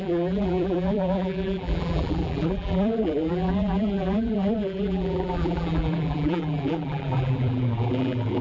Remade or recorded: remade